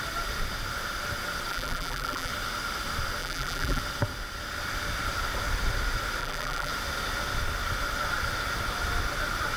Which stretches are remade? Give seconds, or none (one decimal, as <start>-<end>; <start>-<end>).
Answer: 1.5-2.3; 3.2-3.8; 6.2-6.7